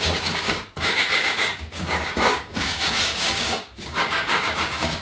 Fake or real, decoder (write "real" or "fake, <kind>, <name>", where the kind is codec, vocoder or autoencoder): fake, codec, DAC